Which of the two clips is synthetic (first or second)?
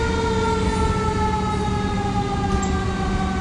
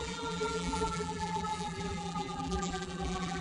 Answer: second